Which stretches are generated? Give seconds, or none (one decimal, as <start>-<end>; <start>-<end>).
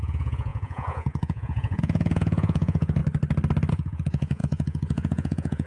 0.0-3.0; 3.7-5.7